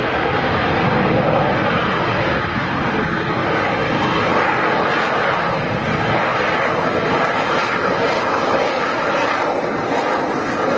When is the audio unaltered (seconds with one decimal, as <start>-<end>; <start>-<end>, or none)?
0.0-10.8